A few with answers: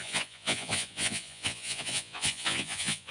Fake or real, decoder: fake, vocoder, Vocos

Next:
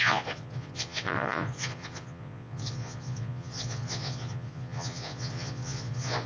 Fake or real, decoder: fake, vocoder, Vocos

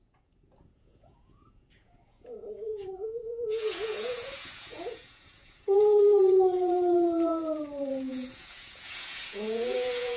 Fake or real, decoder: fake, vocoder, Vocos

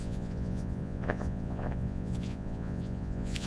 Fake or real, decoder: fake, vocoder, Vocos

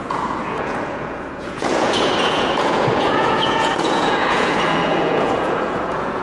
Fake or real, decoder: fake, vocoder, Vocos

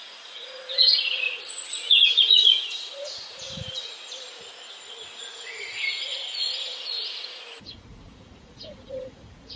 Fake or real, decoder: fake, vocoder, Vocos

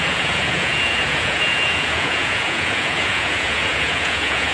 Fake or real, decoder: fake, vocoder, Vocos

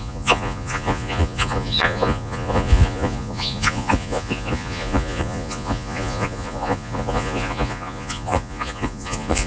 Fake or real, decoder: fake, vocoder, Vocos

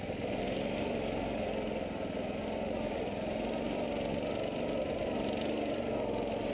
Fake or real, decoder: real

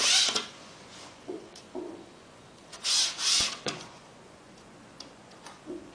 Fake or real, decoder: fake, vocoder, Vocos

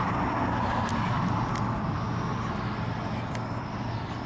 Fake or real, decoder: real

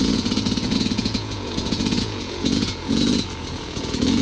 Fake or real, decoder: fake, vocoder, Vocos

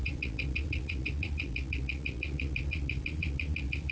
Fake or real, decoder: fake, vocoder, Vocos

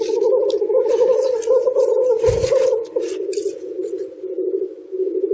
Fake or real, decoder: real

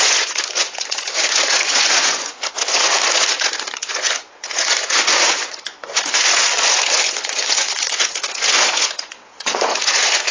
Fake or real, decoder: fake, vocoder, Vocos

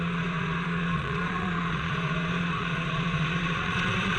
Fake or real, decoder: fake, vocoder, Vocos